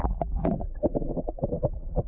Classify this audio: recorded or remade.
remade